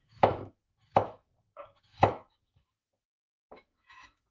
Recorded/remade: remade